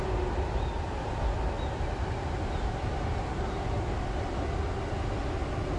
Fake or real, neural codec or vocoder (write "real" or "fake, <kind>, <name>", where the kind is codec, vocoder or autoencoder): real